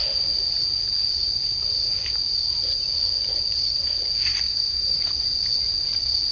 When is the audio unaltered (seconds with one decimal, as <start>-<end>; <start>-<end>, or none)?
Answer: 0.0-4.5; 5.1-6.3